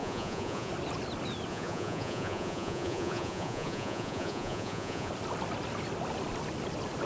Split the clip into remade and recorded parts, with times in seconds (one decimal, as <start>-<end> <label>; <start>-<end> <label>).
0.0-0.7 remade; 0.7-1.5 recorded; 1.5-5.1 remade; 5.1-7.1 recorded